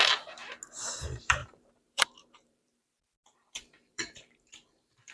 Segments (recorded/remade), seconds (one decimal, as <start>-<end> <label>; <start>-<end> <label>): 0.0-0.4 remade; 0.4-1.0 recorded; 1.0-5.1 remade